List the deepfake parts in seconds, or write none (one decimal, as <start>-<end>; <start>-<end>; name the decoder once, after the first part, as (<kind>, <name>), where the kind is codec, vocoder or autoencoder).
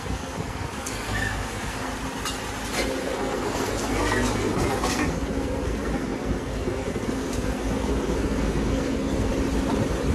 0.0-1.9 (codec, SNAC); 3.0-9.3